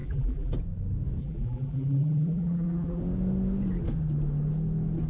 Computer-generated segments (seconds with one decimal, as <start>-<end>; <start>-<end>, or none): 0.0-0.5; 1.2-3.0